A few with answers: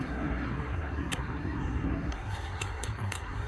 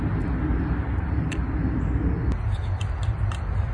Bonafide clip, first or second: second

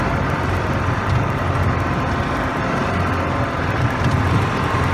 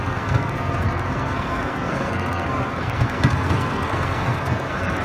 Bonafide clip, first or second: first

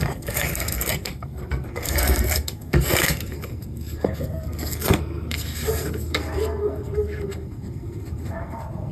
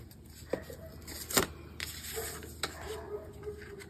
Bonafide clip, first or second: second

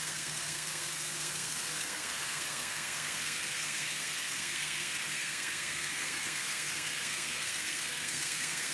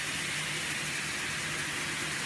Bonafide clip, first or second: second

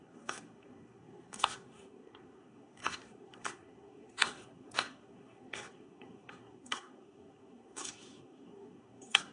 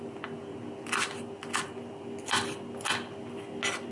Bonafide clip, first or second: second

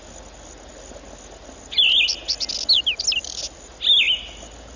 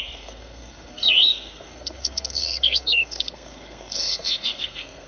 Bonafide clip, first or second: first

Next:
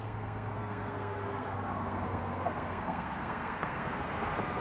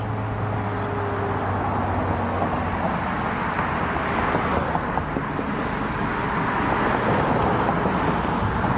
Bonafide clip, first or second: second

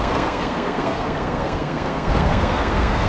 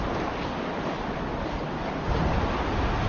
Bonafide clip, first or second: second